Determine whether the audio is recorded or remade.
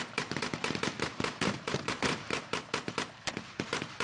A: remade